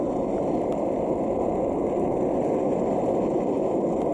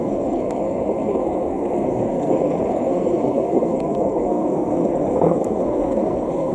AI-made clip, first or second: second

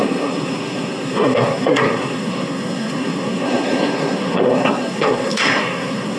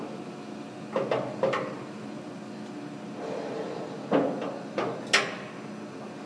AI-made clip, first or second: first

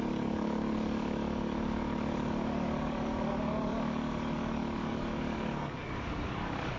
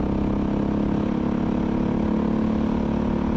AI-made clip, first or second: first